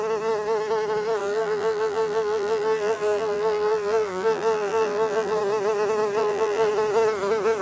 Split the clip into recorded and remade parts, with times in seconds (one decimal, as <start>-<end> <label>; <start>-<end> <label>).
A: 0.0-1.2 recorded; 1.2-5.4 remade; 5.4-6.2 recorded; 6.2-6.7 remade; 6.7-7.6 recorded